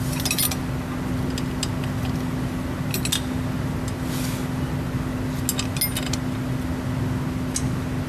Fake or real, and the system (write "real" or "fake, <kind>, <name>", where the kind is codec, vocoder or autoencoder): real